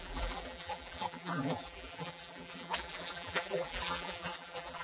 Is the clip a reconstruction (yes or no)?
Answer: yes